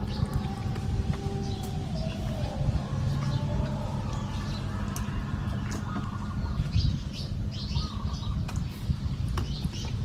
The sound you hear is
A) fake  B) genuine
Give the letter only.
B